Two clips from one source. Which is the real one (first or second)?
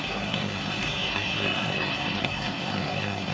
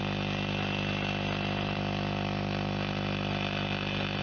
second